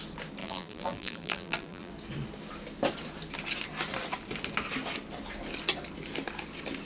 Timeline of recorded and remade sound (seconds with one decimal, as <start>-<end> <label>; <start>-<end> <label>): 0.0-0.4 recorded; 0.4-1.9 remade; 1.9-6.9 recorded